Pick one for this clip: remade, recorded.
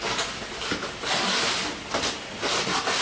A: recorded